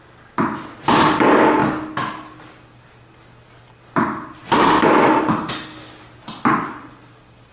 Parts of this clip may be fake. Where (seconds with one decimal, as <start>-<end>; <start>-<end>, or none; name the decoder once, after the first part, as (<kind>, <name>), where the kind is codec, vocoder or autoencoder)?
none